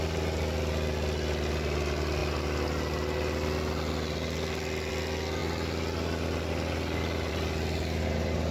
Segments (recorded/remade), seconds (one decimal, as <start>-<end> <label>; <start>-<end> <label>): 0.0-8.5 recorded